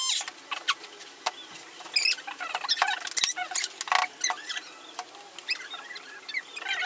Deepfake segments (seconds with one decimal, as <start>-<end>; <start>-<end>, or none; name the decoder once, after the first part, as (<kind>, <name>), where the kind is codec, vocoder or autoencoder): none